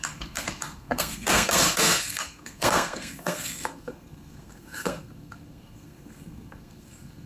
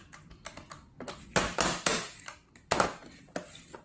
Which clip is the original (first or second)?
second